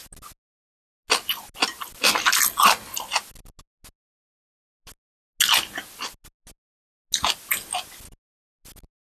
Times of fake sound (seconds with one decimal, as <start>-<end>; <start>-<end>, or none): none